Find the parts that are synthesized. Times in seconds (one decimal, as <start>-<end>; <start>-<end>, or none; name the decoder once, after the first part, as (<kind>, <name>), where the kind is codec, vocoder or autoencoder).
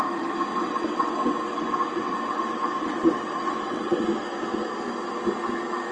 0.5-4.0 (vocoder, WaveNeXt)